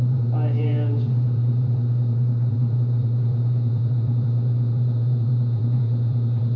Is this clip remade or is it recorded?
remade